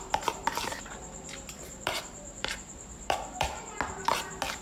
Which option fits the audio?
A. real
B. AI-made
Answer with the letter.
B